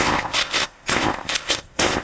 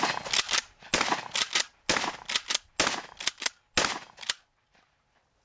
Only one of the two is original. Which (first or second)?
second